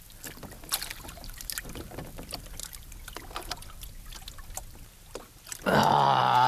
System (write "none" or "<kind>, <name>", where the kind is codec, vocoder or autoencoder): none